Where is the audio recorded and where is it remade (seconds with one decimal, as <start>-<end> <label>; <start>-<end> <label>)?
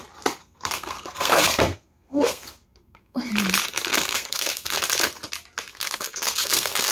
0.0-0.4 recorded; 0.4-3.3 remade; 3.3-3.9 recorded; 3.9-4.8 remade; 4.8-5.7 recorded; 5.7-6.9 remade